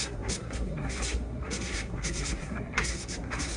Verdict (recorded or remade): remade